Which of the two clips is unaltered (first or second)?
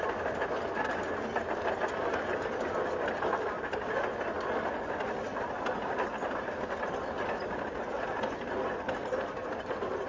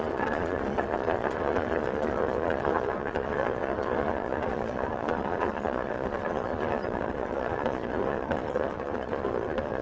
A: first